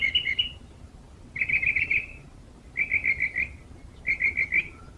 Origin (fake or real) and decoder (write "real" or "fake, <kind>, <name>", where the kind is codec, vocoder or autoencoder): real